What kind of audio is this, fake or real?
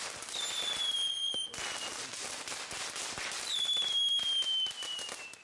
real